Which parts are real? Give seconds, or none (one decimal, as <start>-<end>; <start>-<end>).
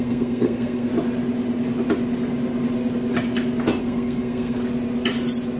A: 0.9-3.8; 4.6-5.6